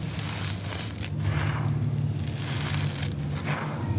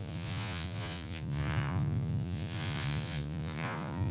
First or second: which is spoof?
second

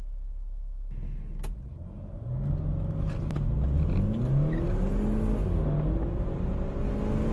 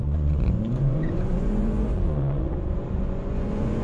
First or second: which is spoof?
second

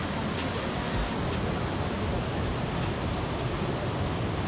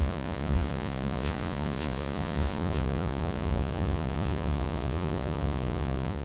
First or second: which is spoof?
second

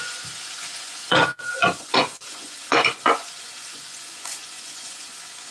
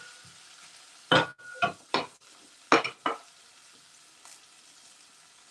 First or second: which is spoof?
first